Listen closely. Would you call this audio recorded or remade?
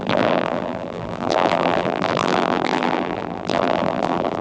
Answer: remade